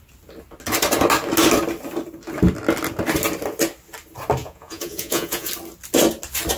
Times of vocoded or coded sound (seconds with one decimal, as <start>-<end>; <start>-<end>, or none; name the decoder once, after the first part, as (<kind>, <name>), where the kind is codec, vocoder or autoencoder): 4.4-5.5 (vocoder, Vocos)